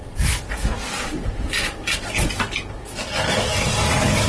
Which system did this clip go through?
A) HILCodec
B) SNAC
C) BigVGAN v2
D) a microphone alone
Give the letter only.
D